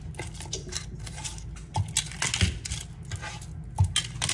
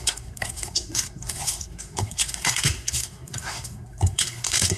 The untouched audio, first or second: first